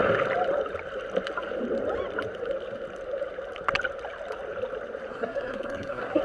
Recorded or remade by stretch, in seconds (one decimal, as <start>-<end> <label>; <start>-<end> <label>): 0.0-5.1 recorded; 5.1-6.2 remade